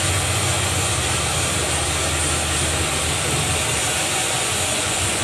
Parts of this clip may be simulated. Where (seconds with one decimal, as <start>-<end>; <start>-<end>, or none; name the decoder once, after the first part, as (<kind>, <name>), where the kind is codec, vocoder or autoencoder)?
0.0-0.9 (vocoder, Vocos); 4.0-5.2